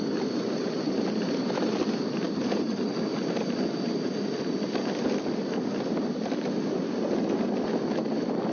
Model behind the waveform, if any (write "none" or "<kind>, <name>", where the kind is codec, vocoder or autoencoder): none